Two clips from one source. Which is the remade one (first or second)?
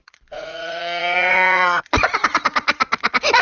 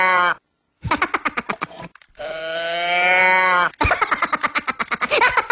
first